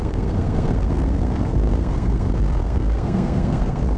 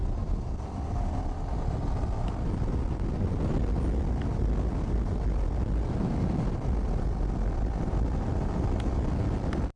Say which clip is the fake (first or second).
first